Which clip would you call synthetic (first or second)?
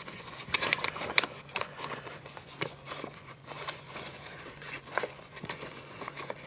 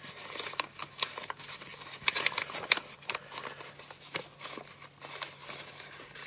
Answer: first